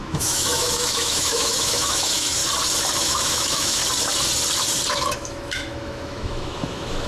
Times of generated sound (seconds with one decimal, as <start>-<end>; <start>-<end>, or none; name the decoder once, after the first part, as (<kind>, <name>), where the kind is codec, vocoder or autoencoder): 0.0-2.4 (autoencoder, DAC-VAE); 3.0-3.8; 4.9-7.1